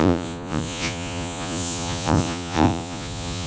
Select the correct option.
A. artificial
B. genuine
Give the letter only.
A